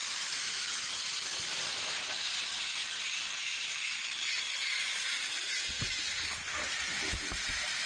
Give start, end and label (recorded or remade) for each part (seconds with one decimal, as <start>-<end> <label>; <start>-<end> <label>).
0.0-0.9 remade; 0.9-7.9 recorded